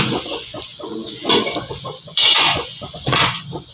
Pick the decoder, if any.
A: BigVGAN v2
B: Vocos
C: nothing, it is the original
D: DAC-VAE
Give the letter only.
B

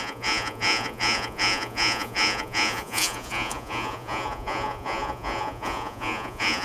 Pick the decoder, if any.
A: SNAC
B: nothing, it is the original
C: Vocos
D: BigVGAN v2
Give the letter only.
C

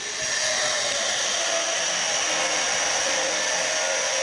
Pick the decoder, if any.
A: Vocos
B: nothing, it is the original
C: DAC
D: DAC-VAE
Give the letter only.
B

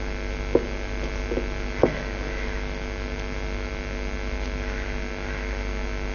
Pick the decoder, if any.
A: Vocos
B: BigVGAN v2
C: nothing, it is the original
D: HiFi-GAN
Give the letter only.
C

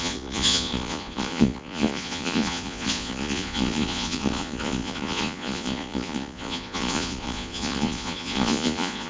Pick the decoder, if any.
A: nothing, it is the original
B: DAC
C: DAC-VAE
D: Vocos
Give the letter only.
D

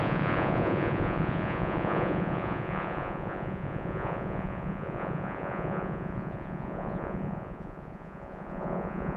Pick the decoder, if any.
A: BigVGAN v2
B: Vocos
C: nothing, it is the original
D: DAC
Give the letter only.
B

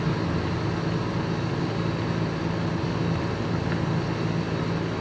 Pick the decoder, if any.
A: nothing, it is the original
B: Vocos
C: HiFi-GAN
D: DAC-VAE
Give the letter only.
A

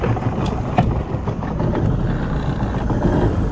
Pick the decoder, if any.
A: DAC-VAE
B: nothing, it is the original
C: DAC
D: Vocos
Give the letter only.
B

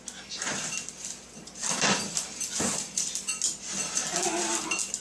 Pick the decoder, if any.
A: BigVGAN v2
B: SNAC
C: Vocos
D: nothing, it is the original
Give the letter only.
D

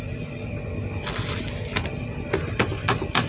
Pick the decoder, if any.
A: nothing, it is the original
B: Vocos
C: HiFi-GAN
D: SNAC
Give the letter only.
A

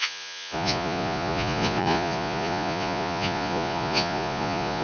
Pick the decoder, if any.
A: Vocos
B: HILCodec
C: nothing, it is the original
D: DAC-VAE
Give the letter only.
A